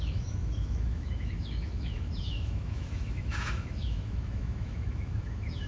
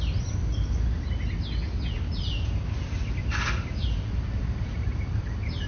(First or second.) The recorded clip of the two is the second